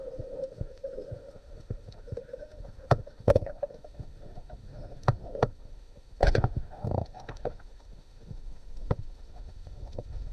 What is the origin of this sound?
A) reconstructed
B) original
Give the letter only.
A